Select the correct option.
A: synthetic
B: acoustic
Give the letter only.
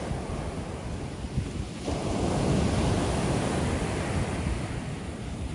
B